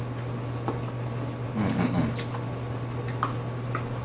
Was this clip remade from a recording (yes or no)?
no